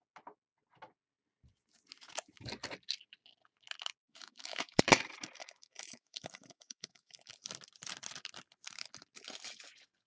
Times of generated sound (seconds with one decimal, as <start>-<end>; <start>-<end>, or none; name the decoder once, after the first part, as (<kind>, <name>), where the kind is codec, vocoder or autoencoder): 4.0-4.8 (autoencoder, DAC-VAE); 5.4-7.3